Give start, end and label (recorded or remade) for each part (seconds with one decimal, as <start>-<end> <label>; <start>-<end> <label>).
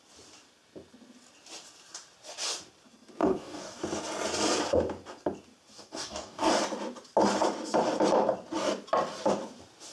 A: 0.0-3.2 recorded; 3.2-3.8 remade; 3.8-5.7 recorded; 5.7-6.5 remade; 6.5-9.9 recorded